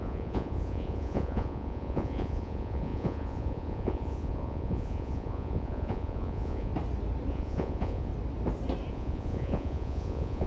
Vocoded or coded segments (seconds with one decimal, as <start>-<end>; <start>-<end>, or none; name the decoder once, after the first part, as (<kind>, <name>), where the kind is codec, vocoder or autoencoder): 0.0-6.7 (vocoder, Vocos); 7.3-8.1; 8.9-10.5